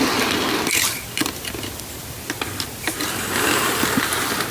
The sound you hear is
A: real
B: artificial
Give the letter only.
A